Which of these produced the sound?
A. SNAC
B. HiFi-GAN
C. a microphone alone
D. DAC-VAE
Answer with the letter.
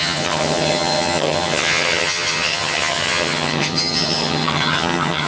B